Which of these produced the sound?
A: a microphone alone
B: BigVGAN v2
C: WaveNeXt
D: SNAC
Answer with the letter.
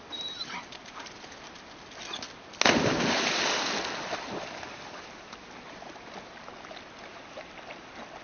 A